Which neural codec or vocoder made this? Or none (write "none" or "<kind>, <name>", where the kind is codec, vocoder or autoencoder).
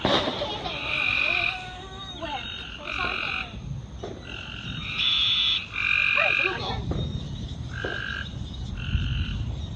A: vocoder, BigVGAN v2